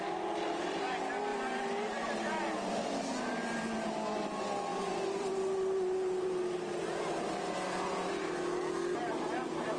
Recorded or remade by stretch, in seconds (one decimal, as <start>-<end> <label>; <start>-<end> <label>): 0.0-1.3 recorded; 1.3-2.1 remade; 2.1-4.7 recorded; 4.7-5.3 remade; 5.3-9.8 recorded